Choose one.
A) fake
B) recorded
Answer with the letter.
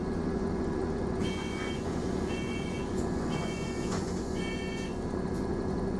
A